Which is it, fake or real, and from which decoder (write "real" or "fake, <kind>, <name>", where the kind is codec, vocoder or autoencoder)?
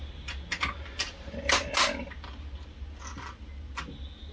real